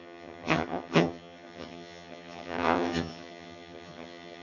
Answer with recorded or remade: remade